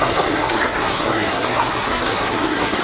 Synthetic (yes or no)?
yes